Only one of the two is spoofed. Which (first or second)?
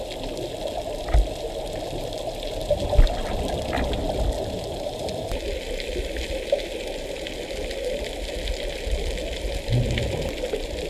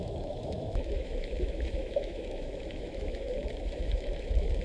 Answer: second